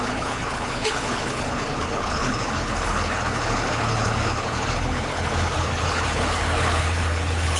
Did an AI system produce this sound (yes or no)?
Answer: yes